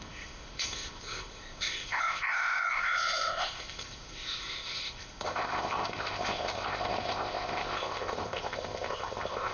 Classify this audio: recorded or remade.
remade